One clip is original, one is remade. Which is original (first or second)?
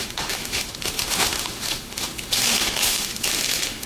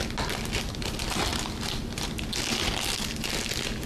second